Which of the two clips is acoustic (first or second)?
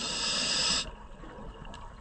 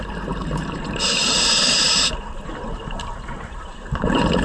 first